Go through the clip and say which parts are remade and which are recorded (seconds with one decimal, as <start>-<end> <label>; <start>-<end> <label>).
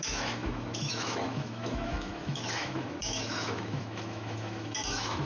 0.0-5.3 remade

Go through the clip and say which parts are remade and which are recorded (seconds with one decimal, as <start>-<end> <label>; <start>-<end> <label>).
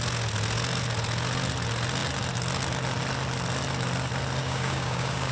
0.0-4.4 recorded; 4.4-5.3 remade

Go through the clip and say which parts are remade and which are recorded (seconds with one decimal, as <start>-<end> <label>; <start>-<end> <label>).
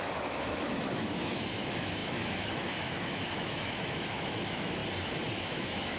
0.0-4.8 remade; 4.8-5.4 recorded; 5.4-6.0 remade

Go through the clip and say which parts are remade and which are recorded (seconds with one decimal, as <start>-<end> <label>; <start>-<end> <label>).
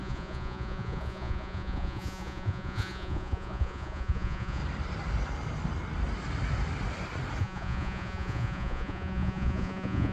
0.0-4.6 remade; 4.6-7.4 recorded; 7.4-10.1 remade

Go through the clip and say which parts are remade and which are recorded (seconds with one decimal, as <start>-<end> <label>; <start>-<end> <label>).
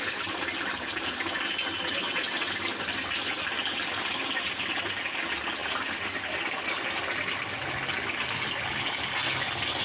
0.0-9.8 recorded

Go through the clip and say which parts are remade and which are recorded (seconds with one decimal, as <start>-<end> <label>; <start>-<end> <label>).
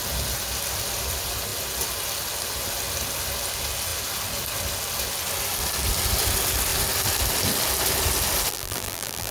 0.0-8.5 recorded; 8.5-9.3 remade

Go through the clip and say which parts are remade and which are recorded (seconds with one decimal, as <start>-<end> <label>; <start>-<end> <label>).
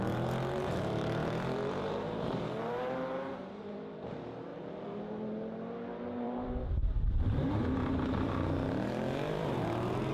0.0-10.1 remade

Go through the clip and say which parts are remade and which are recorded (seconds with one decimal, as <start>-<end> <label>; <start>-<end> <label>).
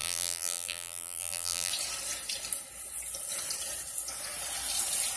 0.0-1.7 remade; 1.7-5.2 recorded